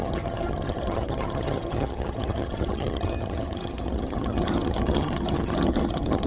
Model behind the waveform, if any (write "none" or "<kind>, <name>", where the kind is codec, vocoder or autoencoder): vocoder, HiFi-GAN